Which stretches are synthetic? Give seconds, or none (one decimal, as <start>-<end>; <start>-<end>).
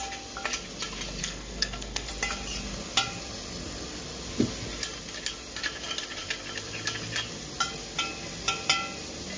1.2-2.1